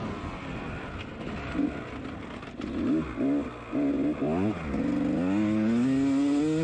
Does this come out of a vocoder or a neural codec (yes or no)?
no